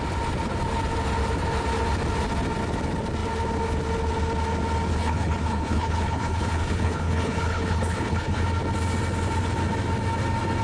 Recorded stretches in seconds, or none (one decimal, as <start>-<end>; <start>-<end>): 0.0-4.9; 8.4-10.6